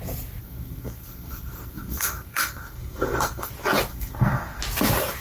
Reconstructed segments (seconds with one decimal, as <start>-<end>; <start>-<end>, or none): 0.4-3.5; 3.9-4.6

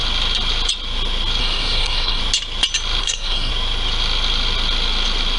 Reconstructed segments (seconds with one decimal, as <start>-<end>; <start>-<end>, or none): 1.4-2.2; 3.0-3.5

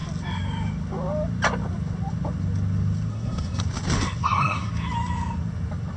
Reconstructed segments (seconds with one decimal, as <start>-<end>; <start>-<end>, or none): 3.1-3.6; 4.2-4.7

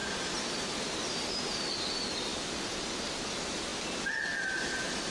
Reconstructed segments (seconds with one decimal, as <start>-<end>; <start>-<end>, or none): none

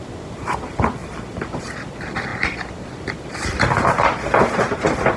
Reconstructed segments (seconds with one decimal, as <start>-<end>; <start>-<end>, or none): 1.0-1.6; 2.3-3.3